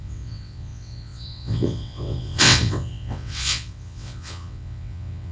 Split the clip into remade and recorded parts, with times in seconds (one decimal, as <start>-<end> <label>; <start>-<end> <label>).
0.0-5.3 remade